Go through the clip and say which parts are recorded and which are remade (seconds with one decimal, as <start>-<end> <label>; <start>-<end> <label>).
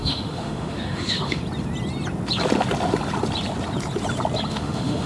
0.0-1.4 remade; 1.4-4.5 recorded; 4.5-5.1 remade